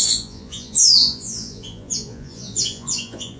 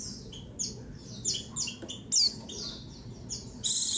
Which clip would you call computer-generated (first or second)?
first